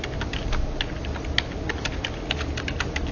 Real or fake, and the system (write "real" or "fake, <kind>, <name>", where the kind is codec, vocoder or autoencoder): real